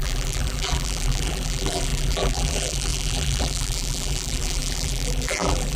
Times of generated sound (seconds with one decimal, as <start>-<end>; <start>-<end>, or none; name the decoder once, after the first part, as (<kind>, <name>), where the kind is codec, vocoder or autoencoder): 0.0-5.8 (vocoder, BigVGAN v2)